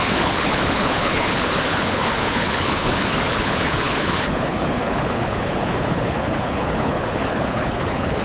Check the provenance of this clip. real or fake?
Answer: fake